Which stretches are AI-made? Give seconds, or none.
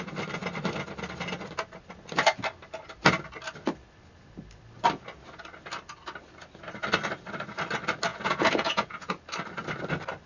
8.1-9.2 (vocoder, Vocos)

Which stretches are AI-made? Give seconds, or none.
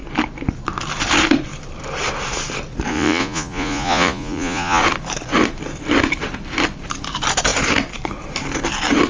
2.9-4.8 (vocoder, Vocos)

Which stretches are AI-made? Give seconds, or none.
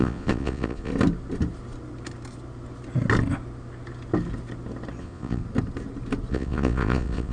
0.0-0.9 (vocoder, Vocos); 5.0-5.4; 6.3-7.3